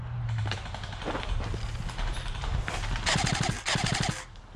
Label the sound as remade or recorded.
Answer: recorded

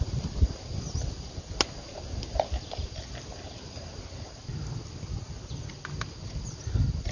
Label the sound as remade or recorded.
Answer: recorded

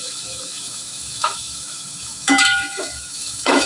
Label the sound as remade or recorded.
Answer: remade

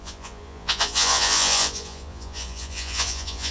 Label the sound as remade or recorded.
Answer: remade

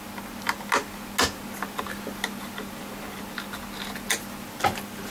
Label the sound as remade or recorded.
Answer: recorded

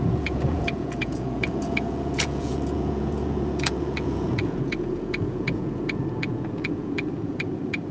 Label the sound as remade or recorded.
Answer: remade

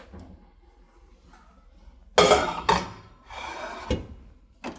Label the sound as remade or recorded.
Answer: recorded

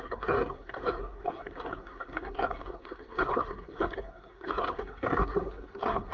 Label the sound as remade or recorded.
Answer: remade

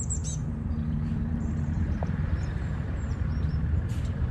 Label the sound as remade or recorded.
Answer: remade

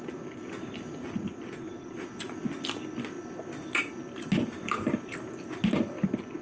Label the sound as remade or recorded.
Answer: recorded